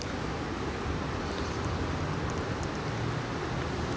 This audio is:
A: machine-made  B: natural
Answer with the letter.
B